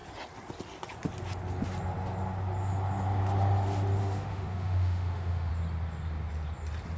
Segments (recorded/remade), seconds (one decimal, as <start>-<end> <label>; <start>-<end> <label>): 0.0-4.0 recorded; 4.0-5.5 remade; 5.5-7.0 recorded